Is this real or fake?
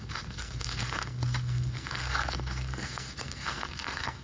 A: fake